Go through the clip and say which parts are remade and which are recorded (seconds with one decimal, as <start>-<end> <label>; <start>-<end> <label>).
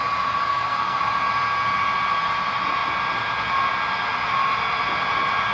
0.0-0.4 recorded; 0.4-1.0 remade; 1.0-5.5 recorded